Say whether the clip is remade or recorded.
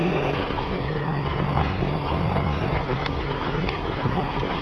remade